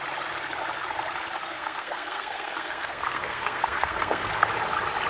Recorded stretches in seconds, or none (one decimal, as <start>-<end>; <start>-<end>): 0.0-1.4; 4.5-5.1